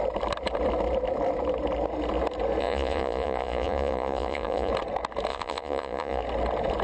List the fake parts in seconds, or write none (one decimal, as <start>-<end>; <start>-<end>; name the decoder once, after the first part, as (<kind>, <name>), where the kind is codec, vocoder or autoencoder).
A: 2.6-4.7 (vocoder, Vocos); 5.3-6.2